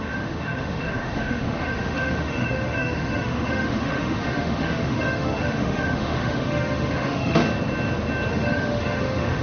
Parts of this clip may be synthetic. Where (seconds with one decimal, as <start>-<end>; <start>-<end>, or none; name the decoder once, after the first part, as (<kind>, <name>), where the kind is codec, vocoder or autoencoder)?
0.0-7.4 (autoencoder, DAC-VAE); 8.3-9.4